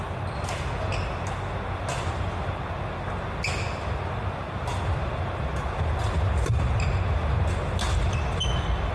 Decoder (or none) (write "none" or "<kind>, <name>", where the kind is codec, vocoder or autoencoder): none